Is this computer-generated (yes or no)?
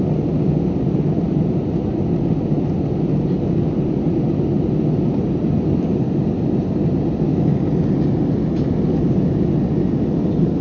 no